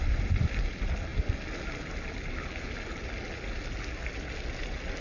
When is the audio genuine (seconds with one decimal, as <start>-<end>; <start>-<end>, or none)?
0.0-5.0